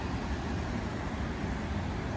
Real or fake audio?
real